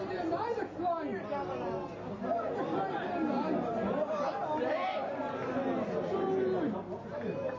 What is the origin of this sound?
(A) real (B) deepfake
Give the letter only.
A